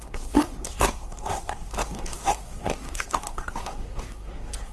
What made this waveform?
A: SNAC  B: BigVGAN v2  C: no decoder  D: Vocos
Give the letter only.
A